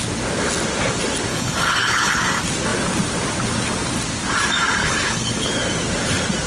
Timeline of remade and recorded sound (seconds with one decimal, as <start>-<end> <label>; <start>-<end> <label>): 0.0-1.3 recorded; 1.3-2.2 remade; 2.2-4.8 recorded; 4.8-5.5 remade; 5.5-6.5 recorded